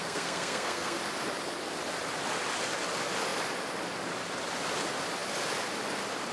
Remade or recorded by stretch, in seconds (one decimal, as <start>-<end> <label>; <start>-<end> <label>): 0.0-1.0 remade; 1.0-6.3 recorded